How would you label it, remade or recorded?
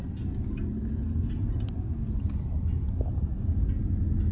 recorded